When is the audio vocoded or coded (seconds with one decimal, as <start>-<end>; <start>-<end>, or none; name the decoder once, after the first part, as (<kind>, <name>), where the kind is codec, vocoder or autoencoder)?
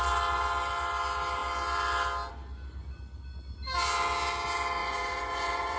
4.8-5.8 (vocoder, Vocos)